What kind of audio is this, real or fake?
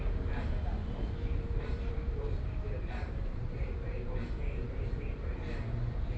fake